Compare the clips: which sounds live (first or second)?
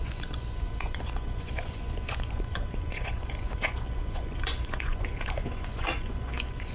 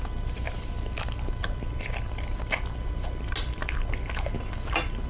second